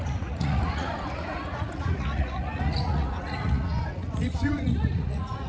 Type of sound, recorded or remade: remade